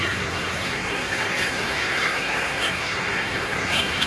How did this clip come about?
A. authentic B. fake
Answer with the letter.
B